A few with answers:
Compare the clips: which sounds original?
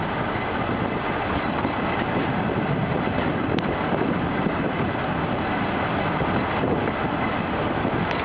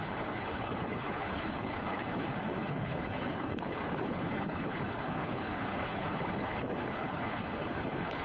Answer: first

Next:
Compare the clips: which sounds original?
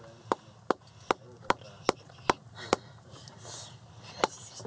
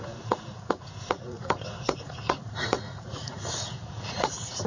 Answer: first